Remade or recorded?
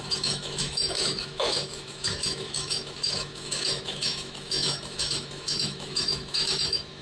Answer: remade